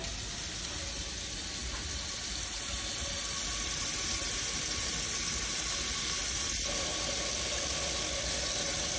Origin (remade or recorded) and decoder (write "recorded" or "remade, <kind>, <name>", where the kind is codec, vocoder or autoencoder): recorded